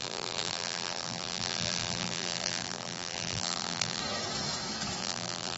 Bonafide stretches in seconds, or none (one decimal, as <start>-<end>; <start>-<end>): 4.0-5.0

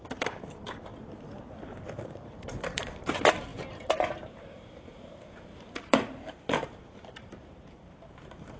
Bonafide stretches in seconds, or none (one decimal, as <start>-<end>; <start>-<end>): 0.9-2.0

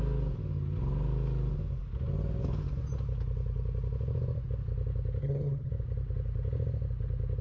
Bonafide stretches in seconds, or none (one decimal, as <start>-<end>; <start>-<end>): 0.0-5.2; 5.7-7.4

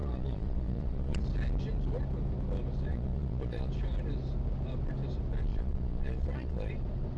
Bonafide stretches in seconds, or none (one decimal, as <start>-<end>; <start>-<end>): 1.2-2.9; 3.7-5.5; 6.7-7.2

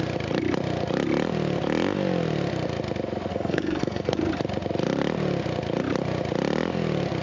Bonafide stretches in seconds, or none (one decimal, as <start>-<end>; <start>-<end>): 0.0-3.3; 4.3-7.2

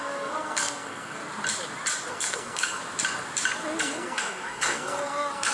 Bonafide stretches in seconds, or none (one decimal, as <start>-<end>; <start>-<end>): 1.2-2.1; 2.8-3.8

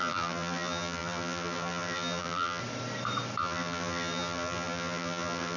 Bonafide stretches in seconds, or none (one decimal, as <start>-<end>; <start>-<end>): 2.6-3.4

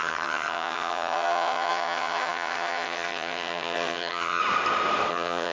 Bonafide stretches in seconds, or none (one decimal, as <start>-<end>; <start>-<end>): 4.4-5.1